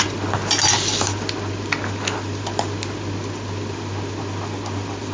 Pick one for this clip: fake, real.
real